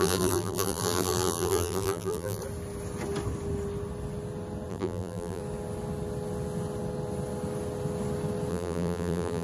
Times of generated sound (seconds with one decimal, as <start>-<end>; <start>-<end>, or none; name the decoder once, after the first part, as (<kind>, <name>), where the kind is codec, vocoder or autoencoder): 0.0-2.4 (vocoder, BigVGAN v2); 4.7-5.4; 8.5-9.4